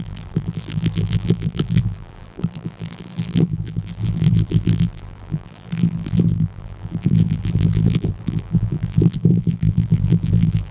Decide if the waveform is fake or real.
fake